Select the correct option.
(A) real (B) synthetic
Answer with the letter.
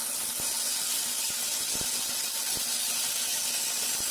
A